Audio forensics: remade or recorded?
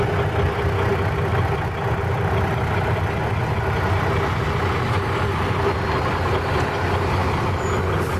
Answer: recorded